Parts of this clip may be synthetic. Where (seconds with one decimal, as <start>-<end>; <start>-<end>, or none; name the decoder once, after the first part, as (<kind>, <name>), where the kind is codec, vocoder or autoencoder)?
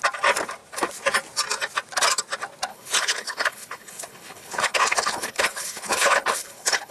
2.7-6.9 (codec, HILCodec)